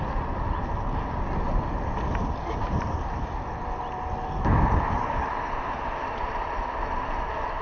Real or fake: real